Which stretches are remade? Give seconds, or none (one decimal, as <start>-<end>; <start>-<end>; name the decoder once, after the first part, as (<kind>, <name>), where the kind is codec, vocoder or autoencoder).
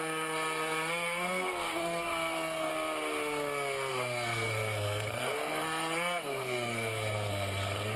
0.0-2.7 (codec, SNAC); 3.9-8.0